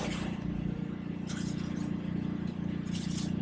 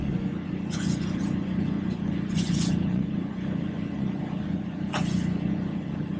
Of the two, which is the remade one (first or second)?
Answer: second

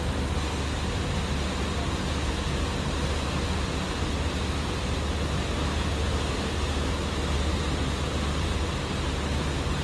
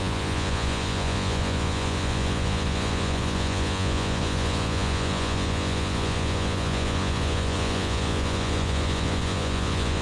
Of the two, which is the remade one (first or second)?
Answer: second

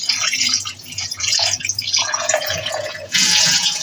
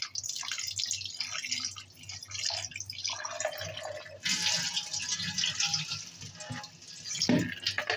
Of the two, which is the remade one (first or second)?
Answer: first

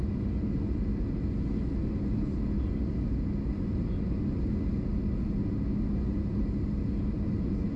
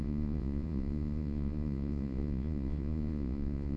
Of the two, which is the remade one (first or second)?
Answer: second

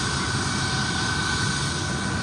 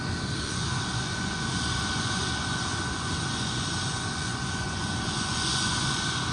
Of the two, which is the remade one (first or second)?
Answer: second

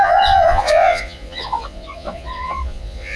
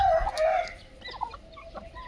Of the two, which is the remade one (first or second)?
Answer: first